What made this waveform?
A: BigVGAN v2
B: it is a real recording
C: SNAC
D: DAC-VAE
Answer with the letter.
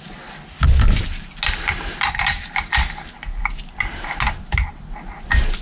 B